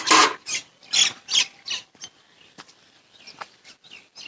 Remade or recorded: recorded